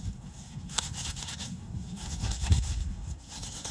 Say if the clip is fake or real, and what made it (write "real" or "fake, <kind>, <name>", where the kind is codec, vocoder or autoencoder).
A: fake, codec, SNAC